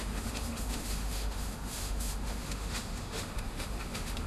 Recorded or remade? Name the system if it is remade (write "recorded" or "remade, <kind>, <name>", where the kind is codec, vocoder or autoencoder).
remade, autoencoder, DAC-VAE